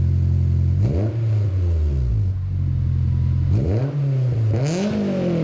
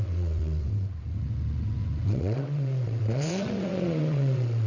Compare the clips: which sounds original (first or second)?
first